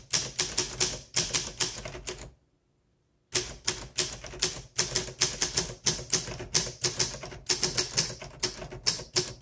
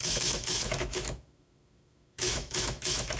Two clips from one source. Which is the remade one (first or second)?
second